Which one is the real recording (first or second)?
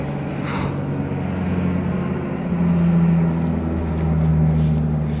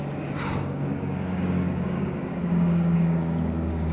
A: first